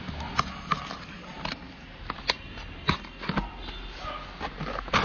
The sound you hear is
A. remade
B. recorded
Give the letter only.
B